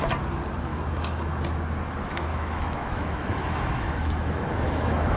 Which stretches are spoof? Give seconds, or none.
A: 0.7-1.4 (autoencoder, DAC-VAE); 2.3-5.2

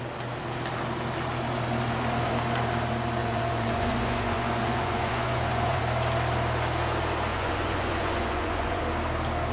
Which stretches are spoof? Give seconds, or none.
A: 3.2-5.8 (vocoder, Vocos); 7.3-8.8

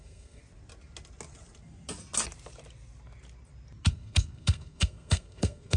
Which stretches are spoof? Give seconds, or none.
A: 0.0-0.4 (codec, SNAC); 3.9-5.8

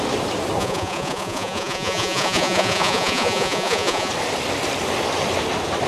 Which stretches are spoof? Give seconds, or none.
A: 0.6-4.1 (vocoder, Vocos)

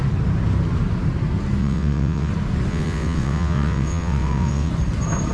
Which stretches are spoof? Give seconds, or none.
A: 1.6-2.3 (vocoder, WaveNeXt); 2.7-4.7

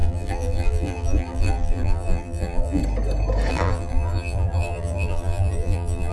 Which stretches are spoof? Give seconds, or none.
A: 0.0-2.8 (vocoder, BigVGAN v2); 3.5-6.1